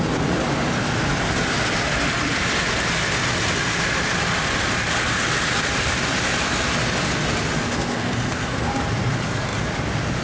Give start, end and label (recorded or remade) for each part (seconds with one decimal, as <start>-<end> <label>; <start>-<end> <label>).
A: 0.0-7.6 recorded; 7.6-8.7 remade; 8.7-10.2 recorded